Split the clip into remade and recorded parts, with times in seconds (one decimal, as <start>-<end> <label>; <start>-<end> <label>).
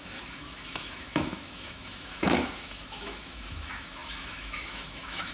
0.0-5.3 remade